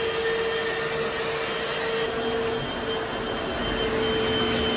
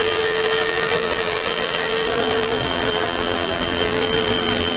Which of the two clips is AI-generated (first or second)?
second